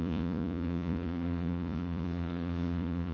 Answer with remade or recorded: remade